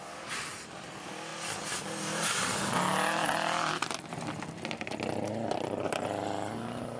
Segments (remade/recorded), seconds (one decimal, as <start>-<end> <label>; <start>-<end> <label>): 0.0-7.0 recorded